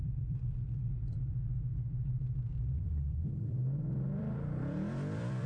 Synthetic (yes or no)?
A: yes